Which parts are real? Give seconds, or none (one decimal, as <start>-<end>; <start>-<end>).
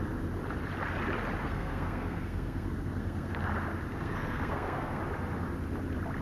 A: 0.0-1.4; 3.3-3.9; 5.0-6.2